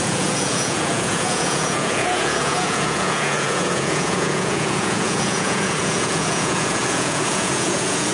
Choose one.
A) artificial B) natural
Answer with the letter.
A